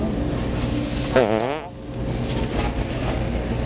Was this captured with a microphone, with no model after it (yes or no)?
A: yes